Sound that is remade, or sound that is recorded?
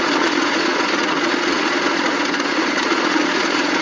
remade